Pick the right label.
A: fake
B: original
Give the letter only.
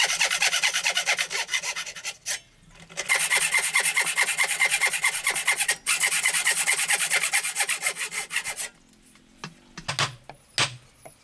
B